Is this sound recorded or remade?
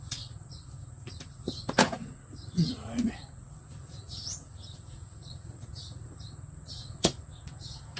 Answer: remade